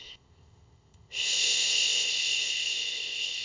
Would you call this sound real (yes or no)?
no